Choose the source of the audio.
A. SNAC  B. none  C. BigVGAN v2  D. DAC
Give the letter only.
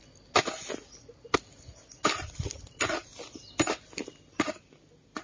B